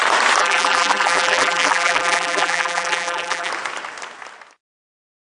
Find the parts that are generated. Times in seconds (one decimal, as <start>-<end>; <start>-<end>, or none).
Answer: 0.4-3.5